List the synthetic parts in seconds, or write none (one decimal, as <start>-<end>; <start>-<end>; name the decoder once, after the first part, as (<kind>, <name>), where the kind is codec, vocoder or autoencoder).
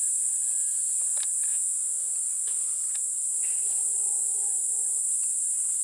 1.5-2.1 (vocoder, Vocos)